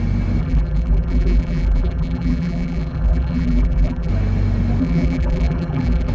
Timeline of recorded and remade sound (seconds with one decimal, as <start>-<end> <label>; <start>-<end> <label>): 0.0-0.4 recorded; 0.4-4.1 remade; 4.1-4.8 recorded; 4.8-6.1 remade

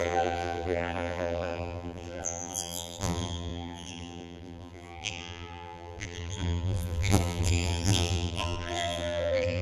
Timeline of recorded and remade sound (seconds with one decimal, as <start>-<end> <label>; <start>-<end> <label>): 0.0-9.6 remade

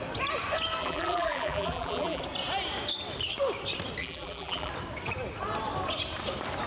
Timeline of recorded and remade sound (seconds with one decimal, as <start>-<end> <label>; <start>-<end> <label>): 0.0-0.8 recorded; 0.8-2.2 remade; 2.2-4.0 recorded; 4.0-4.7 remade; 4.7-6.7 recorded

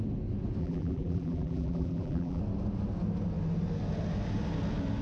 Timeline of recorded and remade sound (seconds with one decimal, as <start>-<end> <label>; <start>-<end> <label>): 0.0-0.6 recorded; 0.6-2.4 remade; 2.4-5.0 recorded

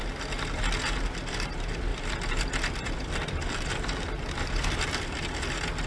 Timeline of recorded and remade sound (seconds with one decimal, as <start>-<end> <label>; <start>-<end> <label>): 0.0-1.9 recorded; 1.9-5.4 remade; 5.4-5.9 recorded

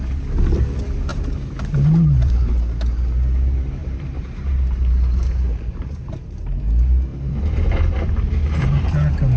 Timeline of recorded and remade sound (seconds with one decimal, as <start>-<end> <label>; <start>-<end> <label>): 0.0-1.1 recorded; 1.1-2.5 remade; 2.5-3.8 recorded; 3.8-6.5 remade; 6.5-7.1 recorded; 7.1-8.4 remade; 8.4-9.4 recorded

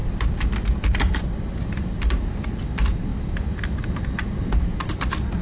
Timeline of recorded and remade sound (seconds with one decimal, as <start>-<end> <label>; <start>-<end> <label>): 0.0-2.4 remade; 2.4-5.4 recorded

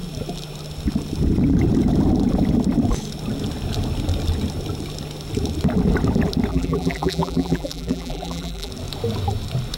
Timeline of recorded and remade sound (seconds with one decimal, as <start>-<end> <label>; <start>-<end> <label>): 0.0-6.5 recorded; 6.5-8.7 remade; 8.7-9.8 recorded